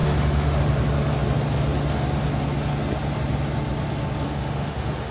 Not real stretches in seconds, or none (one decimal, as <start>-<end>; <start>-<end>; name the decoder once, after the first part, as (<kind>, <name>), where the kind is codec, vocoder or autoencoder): 0.0-0.6 (autoencoder, DAC-VAE); 4.2-5.1